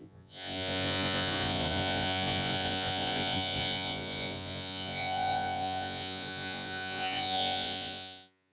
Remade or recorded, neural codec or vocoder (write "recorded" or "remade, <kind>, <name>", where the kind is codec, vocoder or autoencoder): remade, vocoder, Vocos